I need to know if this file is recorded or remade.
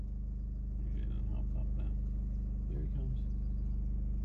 recorded